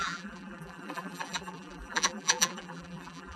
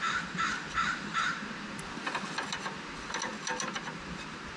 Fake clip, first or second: first